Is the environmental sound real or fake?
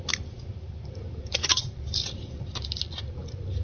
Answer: real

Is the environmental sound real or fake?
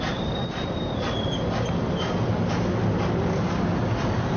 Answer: real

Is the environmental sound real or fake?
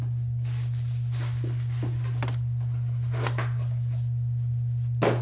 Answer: real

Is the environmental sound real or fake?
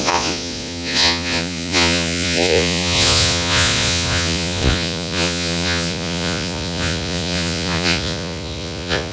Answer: fake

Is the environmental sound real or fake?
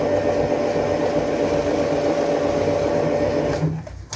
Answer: real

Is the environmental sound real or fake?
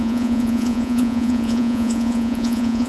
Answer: fake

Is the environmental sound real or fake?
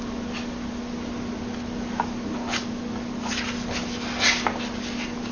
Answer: real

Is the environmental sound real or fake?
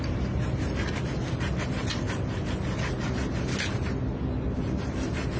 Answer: real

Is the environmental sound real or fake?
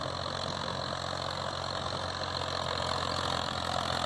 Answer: real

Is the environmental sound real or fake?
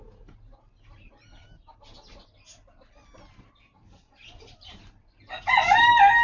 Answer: real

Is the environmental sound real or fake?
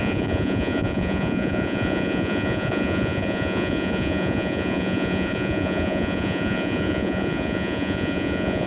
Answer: fake